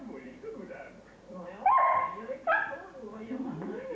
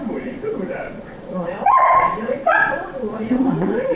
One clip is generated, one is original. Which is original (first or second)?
first